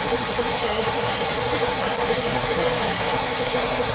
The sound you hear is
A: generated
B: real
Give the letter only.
A